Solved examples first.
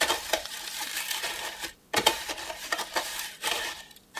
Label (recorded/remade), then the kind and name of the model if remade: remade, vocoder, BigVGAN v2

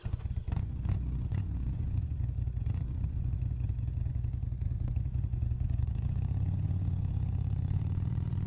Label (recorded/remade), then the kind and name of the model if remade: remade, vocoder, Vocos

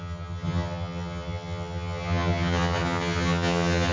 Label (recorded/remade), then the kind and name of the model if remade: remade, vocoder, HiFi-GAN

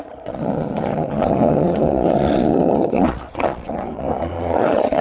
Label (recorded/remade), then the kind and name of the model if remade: remade, vocoder, Vocos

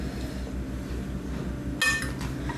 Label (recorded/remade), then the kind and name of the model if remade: recorded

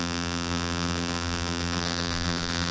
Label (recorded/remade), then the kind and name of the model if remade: remade, vocoder, BigVGAN v2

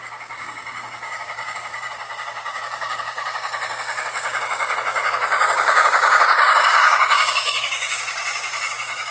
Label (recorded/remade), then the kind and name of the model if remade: remade, codec, DAC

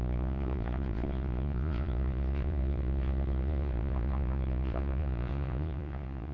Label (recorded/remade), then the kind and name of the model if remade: remade, vocoder, Vocos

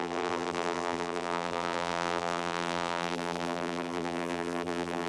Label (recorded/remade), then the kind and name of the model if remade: remade, vocoder, BigVGAN v2